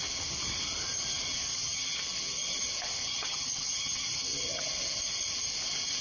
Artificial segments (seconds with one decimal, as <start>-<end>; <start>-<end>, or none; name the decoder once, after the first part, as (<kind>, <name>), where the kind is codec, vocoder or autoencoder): 1.5-2.0 (vocoder, HiFi-GAN); 3.0-4.7